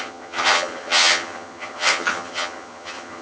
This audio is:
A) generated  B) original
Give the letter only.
A